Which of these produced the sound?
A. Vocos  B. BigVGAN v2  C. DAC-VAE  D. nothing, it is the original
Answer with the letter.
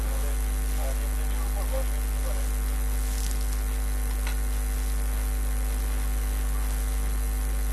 D